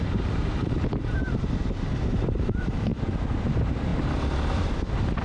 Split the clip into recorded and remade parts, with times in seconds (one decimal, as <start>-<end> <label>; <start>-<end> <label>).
0.0-2.9 remade; 2.9-3.4 recorded; 3.4-5.2 remade